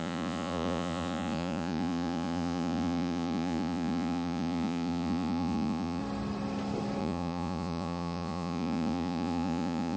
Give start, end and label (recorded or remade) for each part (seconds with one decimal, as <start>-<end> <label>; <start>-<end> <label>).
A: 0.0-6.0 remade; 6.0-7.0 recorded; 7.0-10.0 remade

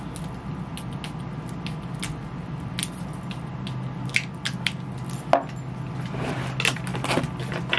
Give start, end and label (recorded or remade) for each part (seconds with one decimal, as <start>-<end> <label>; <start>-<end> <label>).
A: 0.0-7.8 recorded

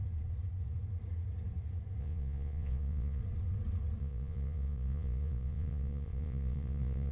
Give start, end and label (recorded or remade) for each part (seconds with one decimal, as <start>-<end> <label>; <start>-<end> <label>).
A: 0.0-2.0 recorded; 2.0-3.2 remade; 3.2-4.0 recorded; 4.0-7.1 remade

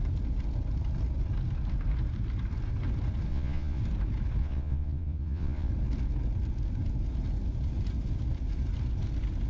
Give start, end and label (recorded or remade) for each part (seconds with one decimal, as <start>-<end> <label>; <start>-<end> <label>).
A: 0.0-3.3 recorded; 3.3-3.8 remade; 3.8-4.4 recorded; 4.4-5.7 remade; 5.7-9.5 recorded